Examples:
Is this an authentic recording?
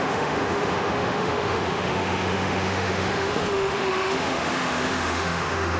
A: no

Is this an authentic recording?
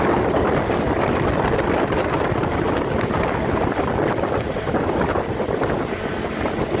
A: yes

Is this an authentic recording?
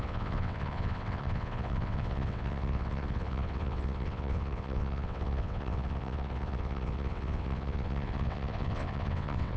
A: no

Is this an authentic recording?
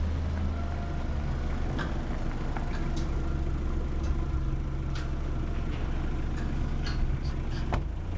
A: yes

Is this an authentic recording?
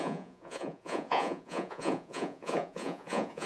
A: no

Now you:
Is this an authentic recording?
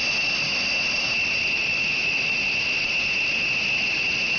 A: yes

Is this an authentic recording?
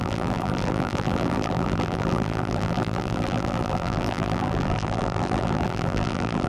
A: no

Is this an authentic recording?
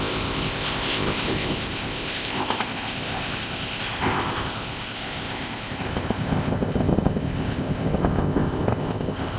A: no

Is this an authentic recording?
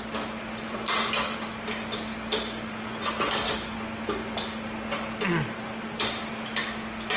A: yes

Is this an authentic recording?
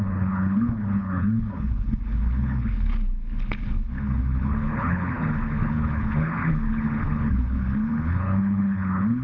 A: no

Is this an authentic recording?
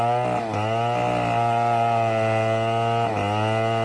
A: yes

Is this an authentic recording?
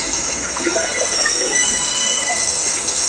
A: no